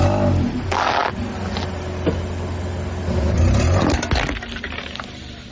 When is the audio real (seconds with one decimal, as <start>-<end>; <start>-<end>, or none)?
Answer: 0.0-5.5